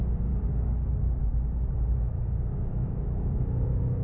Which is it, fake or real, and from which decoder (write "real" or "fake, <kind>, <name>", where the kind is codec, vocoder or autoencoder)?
fake, codec, DAC